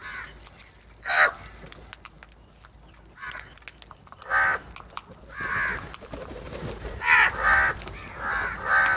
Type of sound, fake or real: real